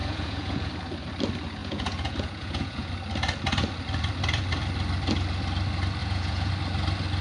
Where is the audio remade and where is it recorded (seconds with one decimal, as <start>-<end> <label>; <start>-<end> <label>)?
0.0-0.7 remade; 0.7-1.6 recorded; 1.6-2.9 remade; 2.9-6.0 recorded; 6.0-6.5 remade; 6.5-7.2 recorded